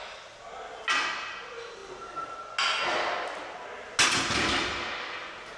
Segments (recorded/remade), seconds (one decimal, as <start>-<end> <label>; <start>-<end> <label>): 0.0-5.6 recorded